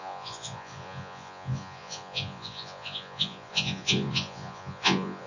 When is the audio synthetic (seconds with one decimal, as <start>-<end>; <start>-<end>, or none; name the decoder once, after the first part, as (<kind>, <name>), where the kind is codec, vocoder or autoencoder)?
0.0-5.3 (vocoder, Vocos)